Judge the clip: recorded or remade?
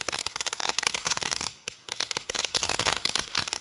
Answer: remade